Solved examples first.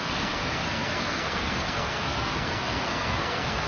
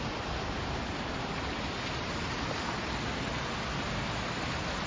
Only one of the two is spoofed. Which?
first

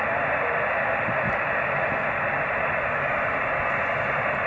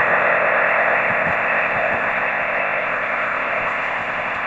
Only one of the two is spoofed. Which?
second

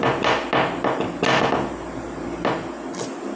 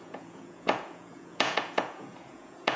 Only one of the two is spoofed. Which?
second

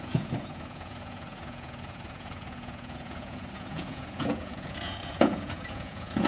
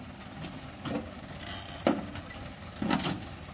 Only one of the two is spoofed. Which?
first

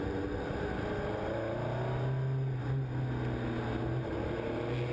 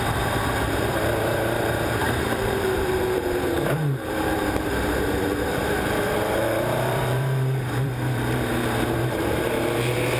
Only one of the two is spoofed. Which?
second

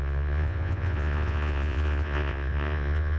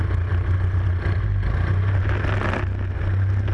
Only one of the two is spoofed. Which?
first